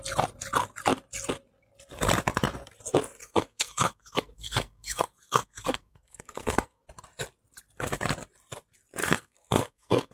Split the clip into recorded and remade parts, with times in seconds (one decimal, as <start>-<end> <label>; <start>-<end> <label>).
0.0-3.2 recorded; 3.2-6.8 remade; 6.8-9.0 recorded; 9.0-10.1 remade